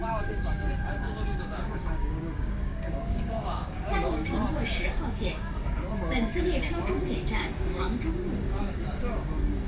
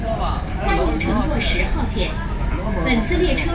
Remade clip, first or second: first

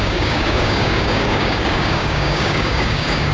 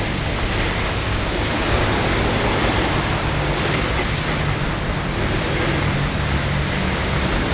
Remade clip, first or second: first